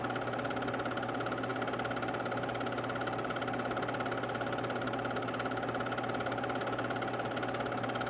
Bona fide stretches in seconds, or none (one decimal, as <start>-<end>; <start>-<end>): 0.0-8.1